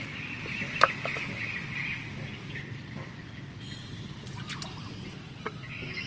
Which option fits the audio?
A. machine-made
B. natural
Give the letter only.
B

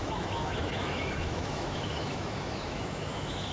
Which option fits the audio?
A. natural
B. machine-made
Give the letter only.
B